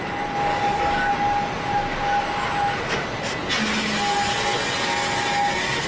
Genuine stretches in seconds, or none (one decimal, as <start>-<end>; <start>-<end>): 0.0-0.5; 1.1-5.9